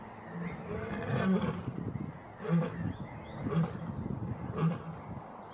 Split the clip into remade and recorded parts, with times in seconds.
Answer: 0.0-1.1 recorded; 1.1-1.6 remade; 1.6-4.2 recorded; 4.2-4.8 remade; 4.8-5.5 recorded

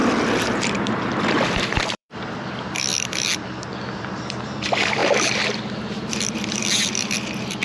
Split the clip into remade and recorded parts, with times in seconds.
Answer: 0.0-1.3 recorded; 1.3-2.9 remade; 2.9-4.0 recorded; 4.0-7.6 remade